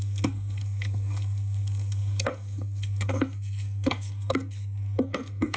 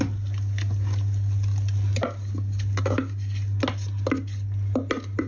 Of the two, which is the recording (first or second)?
second